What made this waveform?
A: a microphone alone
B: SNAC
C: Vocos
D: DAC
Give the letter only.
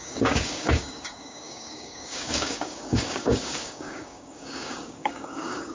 D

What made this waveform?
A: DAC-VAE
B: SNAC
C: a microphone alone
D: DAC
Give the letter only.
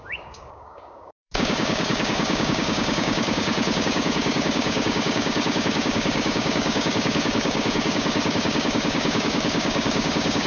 D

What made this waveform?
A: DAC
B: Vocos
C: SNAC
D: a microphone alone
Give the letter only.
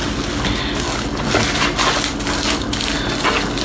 D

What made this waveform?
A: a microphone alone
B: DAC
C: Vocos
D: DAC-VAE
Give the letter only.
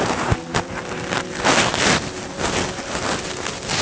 A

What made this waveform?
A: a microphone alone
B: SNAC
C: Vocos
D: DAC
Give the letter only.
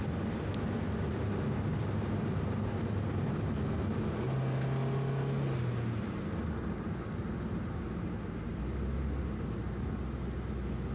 A